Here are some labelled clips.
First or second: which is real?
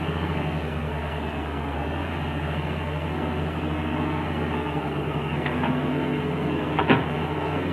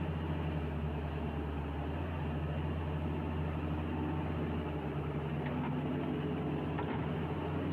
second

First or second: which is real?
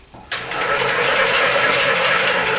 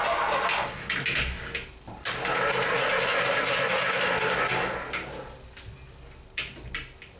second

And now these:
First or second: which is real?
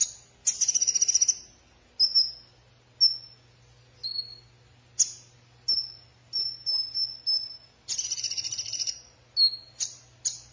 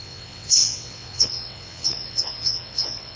first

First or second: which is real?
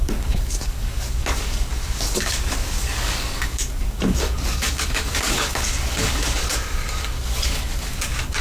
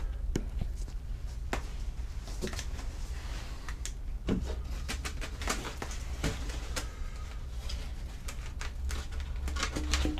second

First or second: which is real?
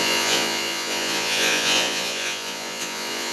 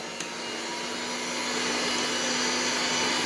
second